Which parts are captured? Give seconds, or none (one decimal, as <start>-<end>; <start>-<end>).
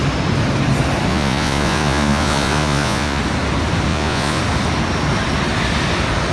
0.0-1.1; 3.2-3.9; 4.4-6.3